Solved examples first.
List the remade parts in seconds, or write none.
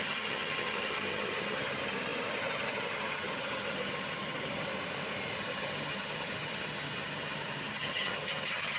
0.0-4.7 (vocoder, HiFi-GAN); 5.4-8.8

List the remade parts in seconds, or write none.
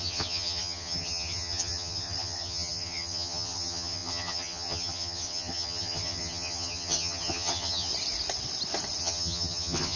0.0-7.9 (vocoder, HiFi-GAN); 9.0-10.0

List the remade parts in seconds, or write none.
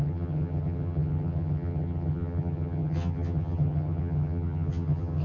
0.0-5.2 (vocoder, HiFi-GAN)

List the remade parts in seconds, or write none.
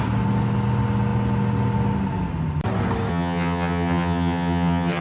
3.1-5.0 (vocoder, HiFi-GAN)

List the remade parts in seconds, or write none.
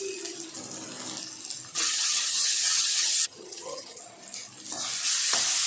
1.7-4.0 (vocoder, HiFi-GAN)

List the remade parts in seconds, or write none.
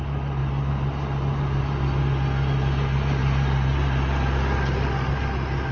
none